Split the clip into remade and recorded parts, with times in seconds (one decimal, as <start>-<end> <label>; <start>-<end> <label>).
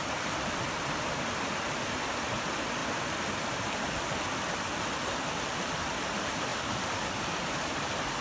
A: 0.0-6.5 remade; 6.5-7.0 recorded; 7.0-8.2 remade